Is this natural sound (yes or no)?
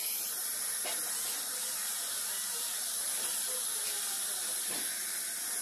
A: no